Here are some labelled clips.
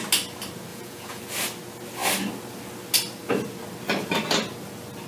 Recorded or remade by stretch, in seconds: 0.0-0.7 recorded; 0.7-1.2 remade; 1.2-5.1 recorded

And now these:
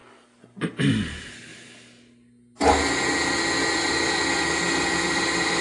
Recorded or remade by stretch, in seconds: 0.0-5.6 recorded